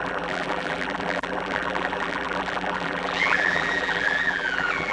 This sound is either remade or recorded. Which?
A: remade